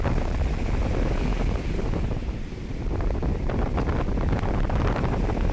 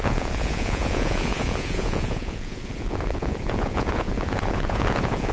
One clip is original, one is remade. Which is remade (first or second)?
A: second